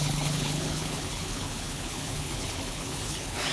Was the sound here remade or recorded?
remade